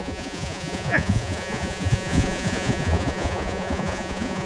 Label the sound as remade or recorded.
remade